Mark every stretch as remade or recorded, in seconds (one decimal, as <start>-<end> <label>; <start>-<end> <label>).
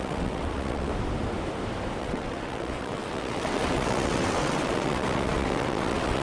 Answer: 0.0-0.9 remade; 0.9-2.0 recorded; 2.0-6.2 remade